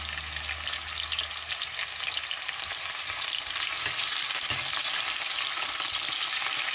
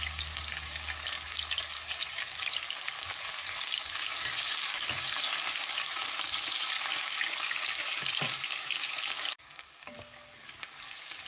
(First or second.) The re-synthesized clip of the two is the second